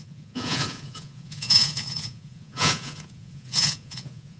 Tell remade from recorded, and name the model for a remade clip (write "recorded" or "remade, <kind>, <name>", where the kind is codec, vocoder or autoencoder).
remade, vocoder, Vocos